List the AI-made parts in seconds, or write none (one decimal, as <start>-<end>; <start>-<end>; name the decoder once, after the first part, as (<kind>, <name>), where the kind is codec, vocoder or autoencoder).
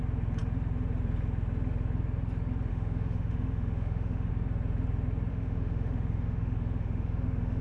2.7-4.3 (autoencoder, DAC-VAE); 5.3-7.6